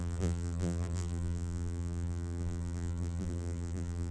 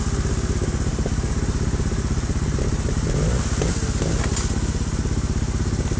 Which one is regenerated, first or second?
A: first